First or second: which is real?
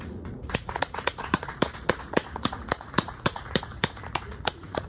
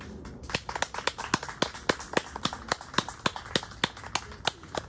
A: second